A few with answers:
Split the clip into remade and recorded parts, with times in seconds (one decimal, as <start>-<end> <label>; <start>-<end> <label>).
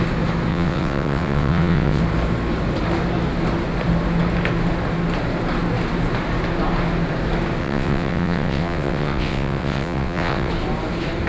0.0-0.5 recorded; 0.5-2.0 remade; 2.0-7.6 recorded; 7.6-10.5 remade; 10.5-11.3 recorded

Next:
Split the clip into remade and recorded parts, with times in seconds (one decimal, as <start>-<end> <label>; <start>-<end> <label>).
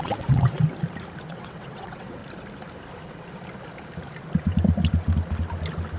0.0-0.6 remade; 0.6-1.3 recorded; 1.3-2.2 remade; 2.2-6.0 recorded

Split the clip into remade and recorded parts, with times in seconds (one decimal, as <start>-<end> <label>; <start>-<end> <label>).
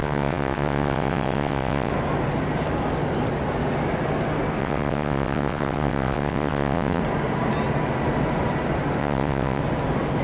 0.0-1.9 remade; 1.9-4.6 recorded; 4.6-7.0 remade; 7.0-9.0 recorded; 9.0-9.6 remade; 9.6-10.2 recorded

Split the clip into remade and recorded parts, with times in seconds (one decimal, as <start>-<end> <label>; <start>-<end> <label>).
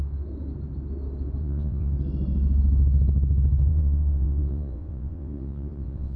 0.0-1.4 recorded; 1.4-1.9 remade; 1.9-3.7 recorded; 3.7-6.2 remade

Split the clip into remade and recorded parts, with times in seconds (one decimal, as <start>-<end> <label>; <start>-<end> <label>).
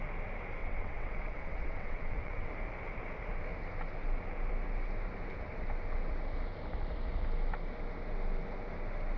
0.0-0.6 recorded; 0.6-2.5 remade; 2.5-9.2 recorded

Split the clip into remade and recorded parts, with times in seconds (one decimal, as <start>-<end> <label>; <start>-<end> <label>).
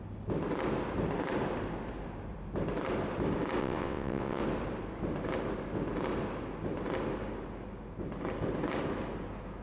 0.0-3.6 recorded; 3.6-4.4 remade; 4.4-9.6 recorded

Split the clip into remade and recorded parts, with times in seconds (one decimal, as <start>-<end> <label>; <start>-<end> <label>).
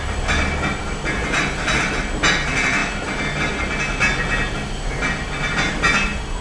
0.0-6.4 recorded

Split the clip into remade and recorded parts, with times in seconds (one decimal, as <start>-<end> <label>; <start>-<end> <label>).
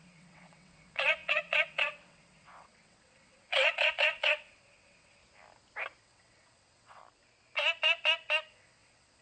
0.0-5.2 remade; 5.2-6.0 recorded; 6.0-7.0 remade; 7.0-8.5 recorded; 8.5-9.2 remade